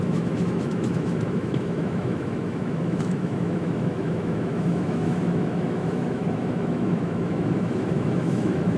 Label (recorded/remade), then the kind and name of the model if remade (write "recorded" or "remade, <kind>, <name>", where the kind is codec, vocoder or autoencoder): remade, autoencoder, DAC-VAE